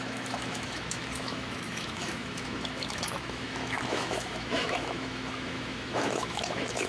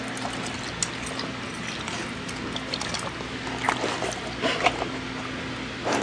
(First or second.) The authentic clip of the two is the second